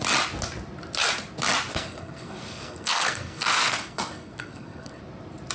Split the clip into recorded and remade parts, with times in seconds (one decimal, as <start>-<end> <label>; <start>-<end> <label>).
0.0-1.7 recorded; 1.7-5.0 remade; 5.0-5.5 recorded